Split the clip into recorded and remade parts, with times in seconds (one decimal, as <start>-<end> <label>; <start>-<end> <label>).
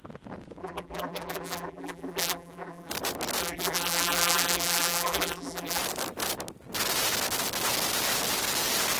0.0-0.6 recorded; 0.6-2.9 remade; 2.9-3.4 recorded; 3.4-5.8 remade; 5.8-9.0 recorded